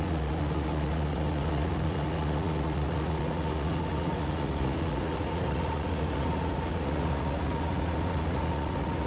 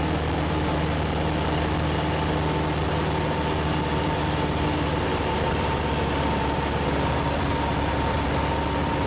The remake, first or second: first